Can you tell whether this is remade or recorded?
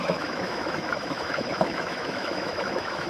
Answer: remade